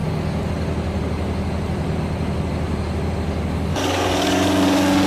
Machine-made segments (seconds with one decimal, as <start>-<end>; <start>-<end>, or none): 3.7-5.1